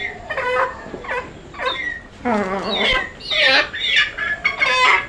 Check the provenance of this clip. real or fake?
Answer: real